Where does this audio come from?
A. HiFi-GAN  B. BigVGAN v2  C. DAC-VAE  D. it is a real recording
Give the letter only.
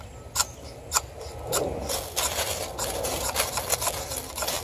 D